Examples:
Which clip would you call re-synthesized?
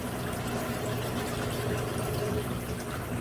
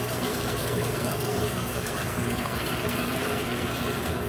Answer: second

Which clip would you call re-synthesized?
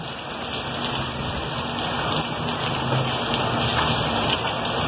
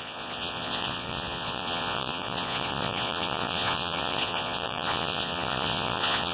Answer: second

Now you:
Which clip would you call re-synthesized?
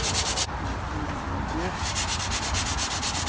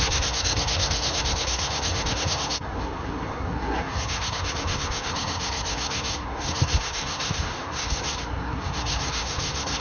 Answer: second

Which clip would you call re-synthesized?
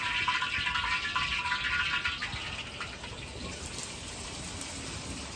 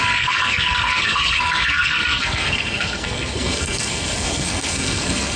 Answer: second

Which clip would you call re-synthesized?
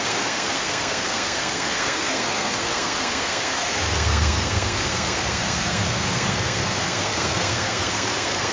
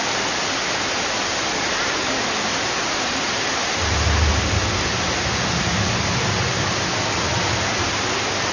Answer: first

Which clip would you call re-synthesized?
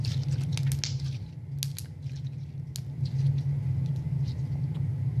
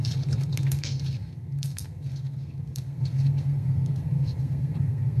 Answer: second